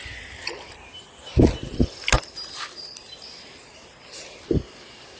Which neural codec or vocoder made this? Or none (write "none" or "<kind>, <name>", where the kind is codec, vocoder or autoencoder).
none